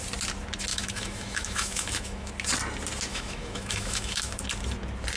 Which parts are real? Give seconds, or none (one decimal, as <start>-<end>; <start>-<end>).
0.0-0.7; 2.3-3.1; 4.4-5.2

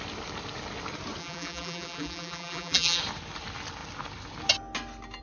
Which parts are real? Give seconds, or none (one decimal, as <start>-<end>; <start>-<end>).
0.0-1.2; 3.0-5.2

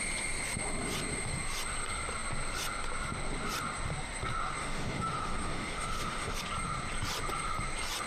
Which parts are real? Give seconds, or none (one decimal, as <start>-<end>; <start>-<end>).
0.0-4.6; 6.4-8.1

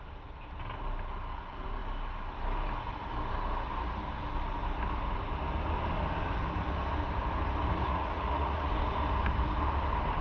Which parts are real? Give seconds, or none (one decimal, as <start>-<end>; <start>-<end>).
0.0-7.7; 8.7-10.2

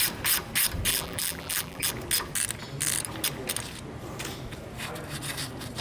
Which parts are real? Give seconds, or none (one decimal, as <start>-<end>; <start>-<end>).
0.0-0.9; 1.9-5.8